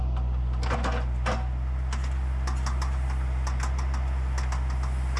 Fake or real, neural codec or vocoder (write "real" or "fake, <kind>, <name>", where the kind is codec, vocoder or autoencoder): real